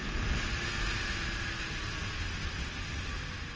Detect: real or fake real